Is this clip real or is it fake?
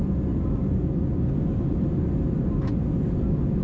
real